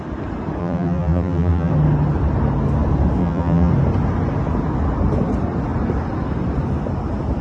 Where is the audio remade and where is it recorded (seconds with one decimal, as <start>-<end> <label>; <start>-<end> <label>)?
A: 0.0-0.6 recorded; 0.6-1.7 remade; 1.7-3.2 recorded; 3.2-3.7 remade; 3.7-7.4 recorded